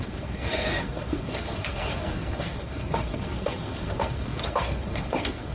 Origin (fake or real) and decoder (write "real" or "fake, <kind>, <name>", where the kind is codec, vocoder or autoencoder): fake, codec, SNAC